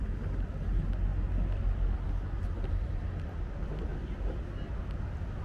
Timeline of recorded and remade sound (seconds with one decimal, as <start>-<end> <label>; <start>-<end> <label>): 0.0-5.4 recorded